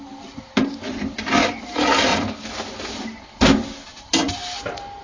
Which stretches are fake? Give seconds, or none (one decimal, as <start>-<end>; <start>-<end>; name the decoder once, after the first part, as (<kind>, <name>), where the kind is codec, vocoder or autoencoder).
none